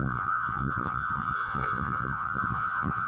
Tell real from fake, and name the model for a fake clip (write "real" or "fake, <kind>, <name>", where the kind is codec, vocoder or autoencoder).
fake, vocoder, Vocos